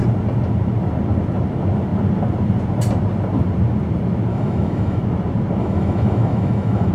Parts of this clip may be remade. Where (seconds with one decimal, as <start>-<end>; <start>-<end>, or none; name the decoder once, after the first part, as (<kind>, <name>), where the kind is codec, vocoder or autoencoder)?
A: 4.3-5.0 (autoencoder, DAC-VAE); 5.6-6.9